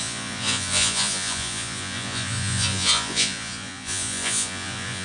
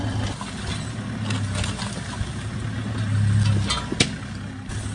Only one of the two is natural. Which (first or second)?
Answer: second